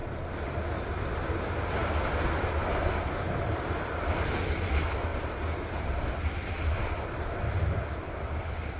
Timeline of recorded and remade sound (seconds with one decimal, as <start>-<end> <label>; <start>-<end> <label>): 0.0-8.8 recorded